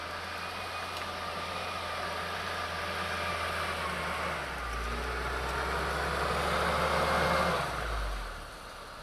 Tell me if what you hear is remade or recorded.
recorded